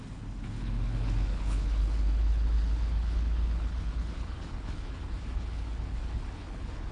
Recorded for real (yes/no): no